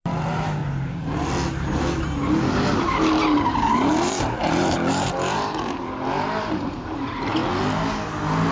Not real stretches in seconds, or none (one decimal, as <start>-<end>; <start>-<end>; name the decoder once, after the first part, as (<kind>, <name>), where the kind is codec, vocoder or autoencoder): 0.0-0.6 (vocoder, BigVGAN v2); 2.8-7.4